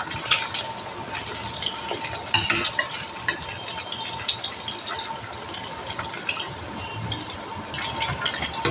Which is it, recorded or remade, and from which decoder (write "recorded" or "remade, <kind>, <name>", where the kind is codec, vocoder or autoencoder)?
recorded